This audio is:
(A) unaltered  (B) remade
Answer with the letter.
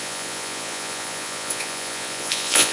B